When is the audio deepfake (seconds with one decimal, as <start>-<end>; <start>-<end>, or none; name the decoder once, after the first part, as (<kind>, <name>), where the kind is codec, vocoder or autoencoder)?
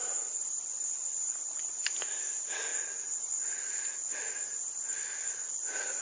1.4-4.0 (vocoder, Vocos); 5.5-6.0